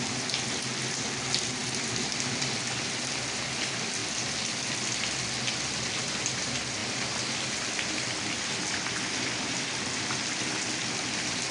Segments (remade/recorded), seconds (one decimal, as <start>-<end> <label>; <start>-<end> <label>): 0.0-11.5 recorded